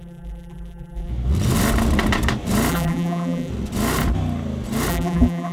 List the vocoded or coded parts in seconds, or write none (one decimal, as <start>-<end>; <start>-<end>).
0.0-1.1; 2.7-3.5; 4.9-5.5